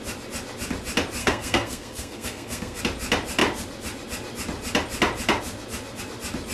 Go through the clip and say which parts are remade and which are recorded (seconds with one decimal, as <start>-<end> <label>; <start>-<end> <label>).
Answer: 0.0-1.2 recorded; 1.2-2.8 remade; 2.8-6.5 recorded